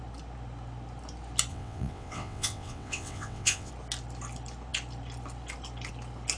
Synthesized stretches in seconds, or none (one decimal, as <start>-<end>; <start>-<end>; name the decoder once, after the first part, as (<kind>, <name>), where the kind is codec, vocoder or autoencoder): 1.5-3.7 (vocoder, WaveNeXt)